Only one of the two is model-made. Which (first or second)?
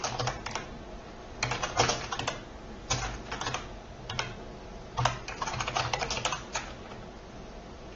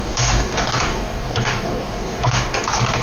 second